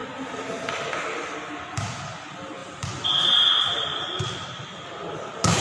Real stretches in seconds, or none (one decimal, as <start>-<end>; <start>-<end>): 2.1-2.6; 3.6-5.6